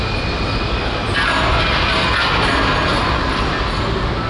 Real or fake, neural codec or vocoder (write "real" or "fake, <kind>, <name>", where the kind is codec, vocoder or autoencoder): real